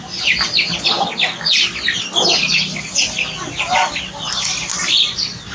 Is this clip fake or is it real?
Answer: real